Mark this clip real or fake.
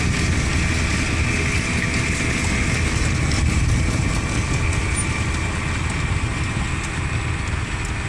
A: real